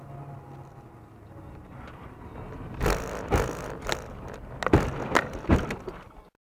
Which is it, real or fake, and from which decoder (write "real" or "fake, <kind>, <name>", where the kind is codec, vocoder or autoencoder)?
real